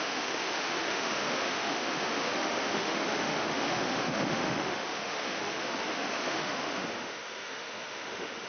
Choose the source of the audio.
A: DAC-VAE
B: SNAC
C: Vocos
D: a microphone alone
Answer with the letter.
A